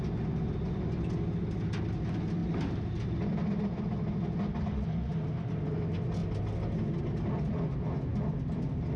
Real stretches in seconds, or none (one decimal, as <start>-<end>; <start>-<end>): 0.0-9.0